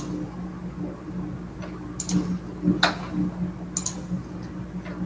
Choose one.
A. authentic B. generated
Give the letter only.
A